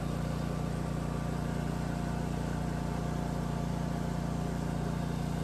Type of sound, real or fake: fake